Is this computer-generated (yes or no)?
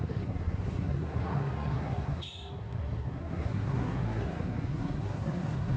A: yes